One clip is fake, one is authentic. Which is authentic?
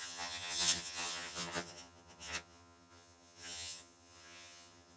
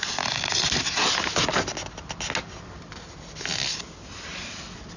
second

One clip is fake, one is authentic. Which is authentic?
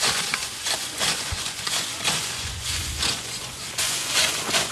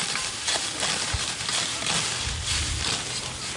second